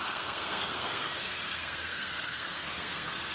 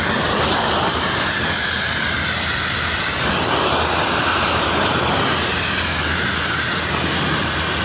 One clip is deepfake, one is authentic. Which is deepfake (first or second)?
first